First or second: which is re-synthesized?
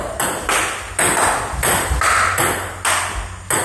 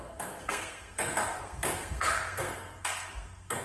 second